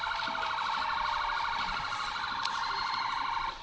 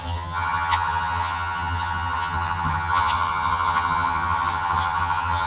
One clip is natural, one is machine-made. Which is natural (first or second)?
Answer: first